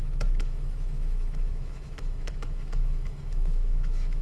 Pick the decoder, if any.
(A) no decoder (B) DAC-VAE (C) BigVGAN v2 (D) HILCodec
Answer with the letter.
B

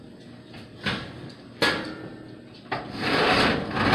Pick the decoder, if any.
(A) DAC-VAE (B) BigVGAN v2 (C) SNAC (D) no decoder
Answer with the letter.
D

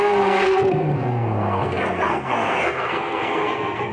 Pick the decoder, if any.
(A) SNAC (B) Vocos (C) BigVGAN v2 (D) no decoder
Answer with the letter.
A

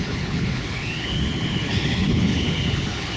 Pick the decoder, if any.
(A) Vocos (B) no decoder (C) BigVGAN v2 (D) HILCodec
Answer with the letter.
D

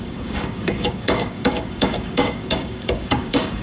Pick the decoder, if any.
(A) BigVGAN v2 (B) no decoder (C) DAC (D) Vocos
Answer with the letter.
C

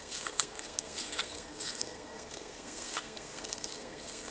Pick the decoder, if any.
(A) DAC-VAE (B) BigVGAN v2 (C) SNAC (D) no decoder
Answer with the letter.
C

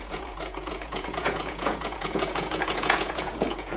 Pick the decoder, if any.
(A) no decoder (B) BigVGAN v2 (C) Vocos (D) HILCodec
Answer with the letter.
C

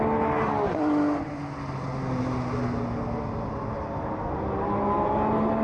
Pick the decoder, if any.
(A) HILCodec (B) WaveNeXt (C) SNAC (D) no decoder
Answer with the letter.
D